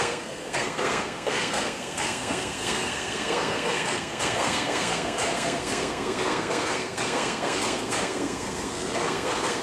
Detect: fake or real fake